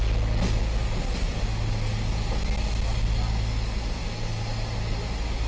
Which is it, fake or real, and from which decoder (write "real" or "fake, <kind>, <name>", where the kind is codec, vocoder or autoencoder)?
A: real